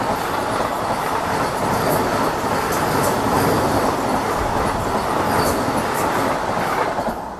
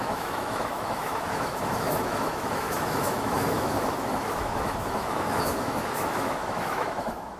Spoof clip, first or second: second